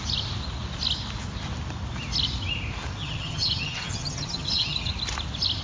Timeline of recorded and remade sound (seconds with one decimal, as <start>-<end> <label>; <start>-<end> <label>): 0.0-3.0 recorded; 3.0-4.9 remade; 4.9-5.6 recorded